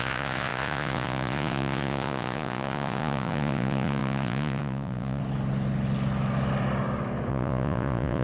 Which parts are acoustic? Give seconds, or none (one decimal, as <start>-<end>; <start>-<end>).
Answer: 5.2-7.3